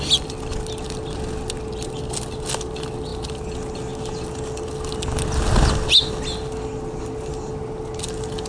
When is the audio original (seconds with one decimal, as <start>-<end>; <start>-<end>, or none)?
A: 0.0-8.5